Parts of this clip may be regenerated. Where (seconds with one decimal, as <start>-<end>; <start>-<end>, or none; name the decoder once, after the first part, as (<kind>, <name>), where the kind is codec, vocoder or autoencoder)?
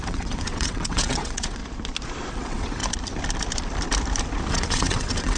0.0-1.6 (vocoder, WaveNeXt); 2.3-2.8; 4.5-5.4